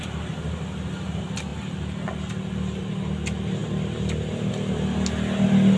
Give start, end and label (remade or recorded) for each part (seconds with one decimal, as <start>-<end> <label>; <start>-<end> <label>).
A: 0.0-5.8 recorded